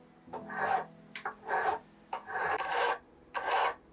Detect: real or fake real